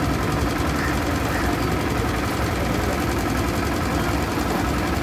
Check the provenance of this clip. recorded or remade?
recorded